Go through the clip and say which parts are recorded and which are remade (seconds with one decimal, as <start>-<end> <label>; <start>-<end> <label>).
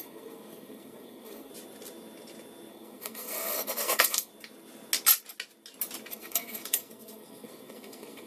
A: 0.0-1.5 remade; 1.5-2.7 recorded; 2.7-4.3 remade; 4.3-6.1 recorded; 6.1-8.3 remade